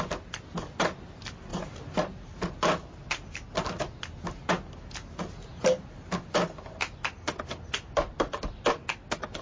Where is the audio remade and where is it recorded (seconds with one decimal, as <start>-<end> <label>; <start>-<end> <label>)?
0.0-9.4 recorded